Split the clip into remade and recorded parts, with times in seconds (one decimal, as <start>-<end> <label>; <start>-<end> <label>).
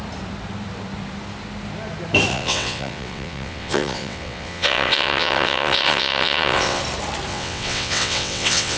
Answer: 0.0-2.3 recorded; 2.3-6.8 remade; 6.8-7.3 recorded; 7.3-8.8 remade